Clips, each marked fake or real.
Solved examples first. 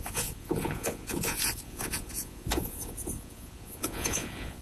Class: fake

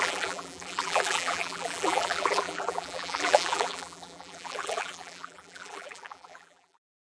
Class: fake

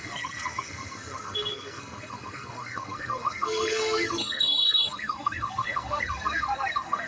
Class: fake